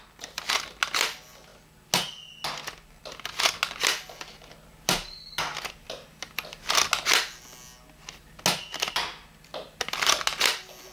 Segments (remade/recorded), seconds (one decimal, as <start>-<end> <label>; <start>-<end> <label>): 0.0-10.9 recorded